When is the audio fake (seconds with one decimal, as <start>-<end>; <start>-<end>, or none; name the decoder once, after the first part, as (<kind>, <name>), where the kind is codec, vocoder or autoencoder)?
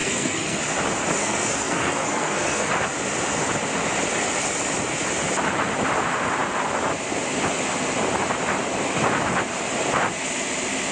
0.0-0.6 (codec, SNAC); 1.2-2.7